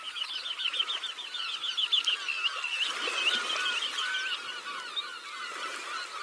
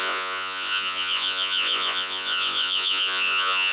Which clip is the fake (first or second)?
second